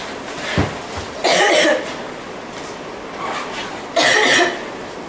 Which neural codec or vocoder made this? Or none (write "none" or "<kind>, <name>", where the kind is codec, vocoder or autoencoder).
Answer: none